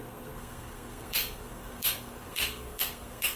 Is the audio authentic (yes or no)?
no